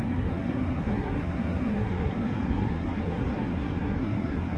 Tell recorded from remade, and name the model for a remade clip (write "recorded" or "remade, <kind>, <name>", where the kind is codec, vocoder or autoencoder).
remade, codec, SNAC